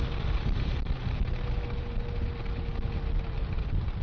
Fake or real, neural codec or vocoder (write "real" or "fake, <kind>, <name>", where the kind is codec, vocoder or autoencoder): real